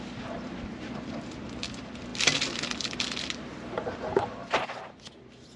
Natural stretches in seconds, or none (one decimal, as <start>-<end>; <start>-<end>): none